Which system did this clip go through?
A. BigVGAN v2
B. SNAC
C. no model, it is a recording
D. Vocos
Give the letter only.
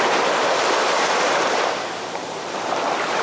A